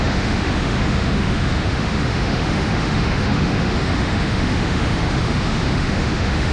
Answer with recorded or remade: remade